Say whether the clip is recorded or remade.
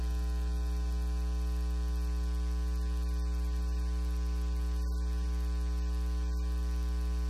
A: recorded